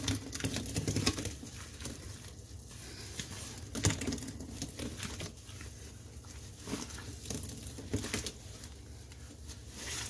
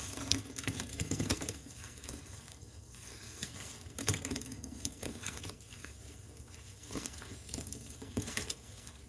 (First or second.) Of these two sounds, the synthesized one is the second